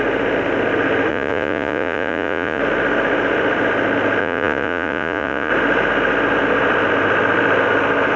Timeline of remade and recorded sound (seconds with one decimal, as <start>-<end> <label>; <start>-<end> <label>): 0.0-1.1 recorded; 1.1-2.6 remade; 2.6-4.2 recorded; 4.2-5.5 remade; 5.5-8.2 recorded